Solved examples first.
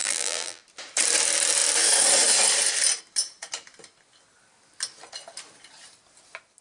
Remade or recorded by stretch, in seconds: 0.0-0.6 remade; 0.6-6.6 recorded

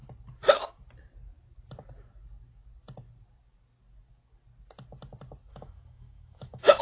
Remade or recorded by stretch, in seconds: 0.0-5.5 recorded; 5.5-6.8 remade